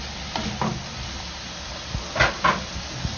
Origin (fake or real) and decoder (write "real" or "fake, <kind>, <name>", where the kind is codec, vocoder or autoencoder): real